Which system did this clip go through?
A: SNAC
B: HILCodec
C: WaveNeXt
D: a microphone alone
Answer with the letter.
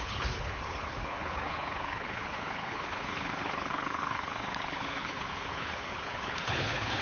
B